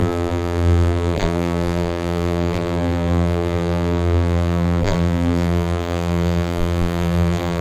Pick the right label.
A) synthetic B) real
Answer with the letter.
A